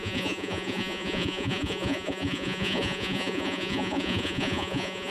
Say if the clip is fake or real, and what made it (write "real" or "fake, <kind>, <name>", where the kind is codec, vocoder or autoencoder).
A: fake, vocoder, Vocos